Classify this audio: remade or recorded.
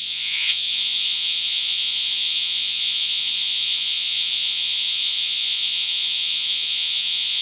remade